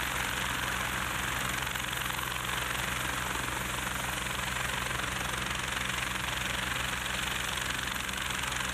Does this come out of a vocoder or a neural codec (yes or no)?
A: no